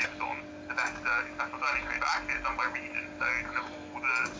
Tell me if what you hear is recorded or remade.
recorded